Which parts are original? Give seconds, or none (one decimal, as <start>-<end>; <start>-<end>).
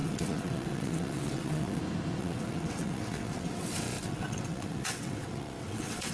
1.8-2.2